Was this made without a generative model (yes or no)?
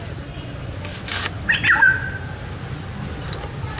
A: yes